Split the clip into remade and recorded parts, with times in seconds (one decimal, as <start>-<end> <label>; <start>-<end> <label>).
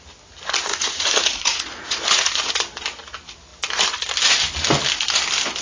0.0-0.7 recorded; 0.7-2.5 remade; 2.5-5.6 recorded